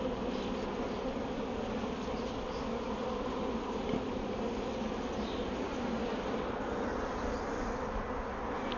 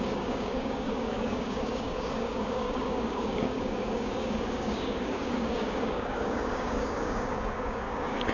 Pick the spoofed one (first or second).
second